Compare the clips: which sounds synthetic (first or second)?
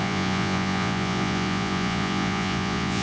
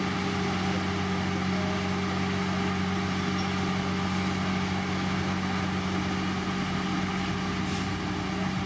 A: first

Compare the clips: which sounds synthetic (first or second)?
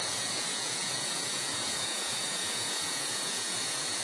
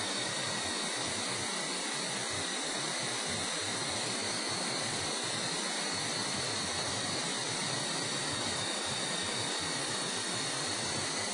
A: first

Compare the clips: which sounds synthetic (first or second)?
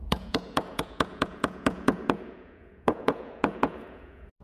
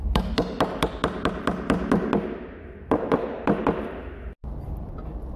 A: first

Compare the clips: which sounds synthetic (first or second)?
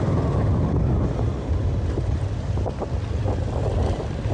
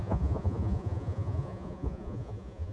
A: second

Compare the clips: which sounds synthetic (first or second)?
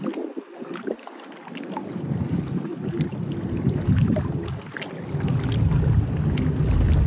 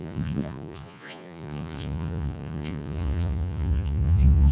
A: second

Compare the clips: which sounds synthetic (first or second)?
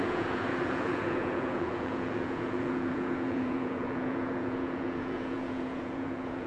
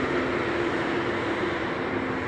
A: first